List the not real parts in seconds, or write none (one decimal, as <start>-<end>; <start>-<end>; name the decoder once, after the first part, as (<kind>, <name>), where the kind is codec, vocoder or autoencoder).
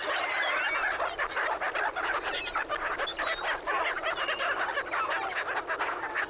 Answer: none